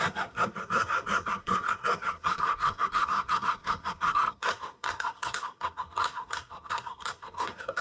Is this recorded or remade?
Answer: remade